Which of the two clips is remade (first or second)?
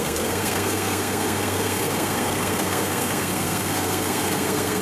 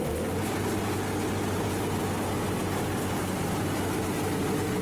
first